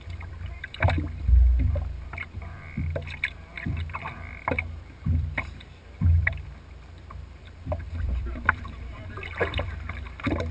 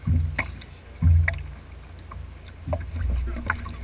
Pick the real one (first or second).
second